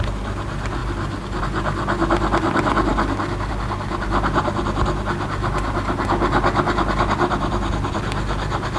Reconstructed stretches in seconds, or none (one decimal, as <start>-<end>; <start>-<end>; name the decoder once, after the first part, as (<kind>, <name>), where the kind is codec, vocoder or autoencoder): none